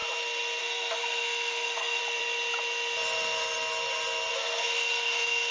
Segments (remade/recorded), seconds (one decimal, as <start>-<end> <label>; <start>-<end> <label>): 0.0-0.6 recorded; 0.6-2.0 remade; 2.0-4.3 recorded; 4.3-5.5 remade